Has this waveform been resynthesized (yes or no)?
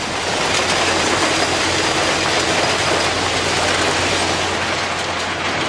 no